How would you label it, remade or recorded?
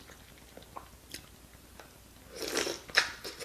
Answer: recorded